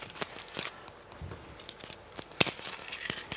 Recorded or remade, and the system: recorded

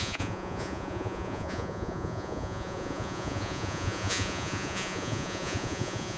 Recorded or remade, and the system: remade, vocoder, Vocos